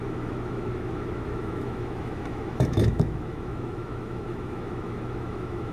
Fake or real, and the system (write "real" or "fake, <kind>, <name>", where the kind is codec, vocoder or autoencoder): fake, autoencoder, DAC-VAE